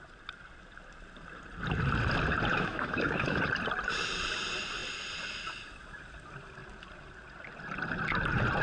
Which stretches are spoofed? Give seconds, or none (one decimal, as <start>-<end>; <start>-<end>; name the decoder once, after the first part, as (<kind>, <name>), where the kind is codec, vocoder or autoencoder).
2.5-3.4 (autoencoder, DAC-VAE)